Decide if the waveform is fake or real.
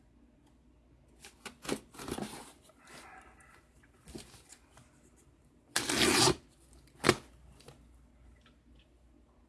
real